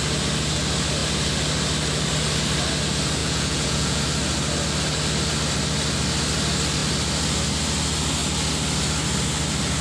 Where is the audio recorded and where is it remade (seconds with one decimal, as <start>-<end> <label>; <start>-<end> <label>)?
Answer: 0.0-3.2 recorded; 3.2-4.0 remade; 4.0-9.8 recorded